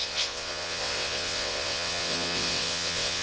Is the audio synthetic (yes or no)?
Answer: yes